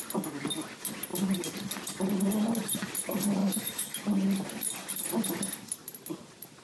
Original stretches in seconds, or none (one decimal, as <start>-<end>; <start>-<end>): 0.0-3.4; 4.0-6.6